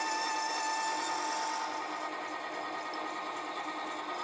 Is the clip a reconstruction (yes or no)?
no